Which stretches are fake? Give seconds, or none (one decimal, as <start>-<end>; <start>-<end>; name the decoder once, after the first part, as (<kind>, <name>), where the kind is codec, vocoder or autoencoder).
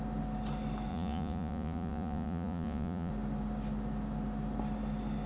0.9-3.1 (vocoder, Vocos)